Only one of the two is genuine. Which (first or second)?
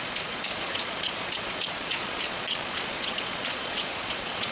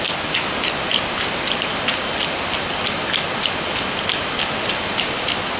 second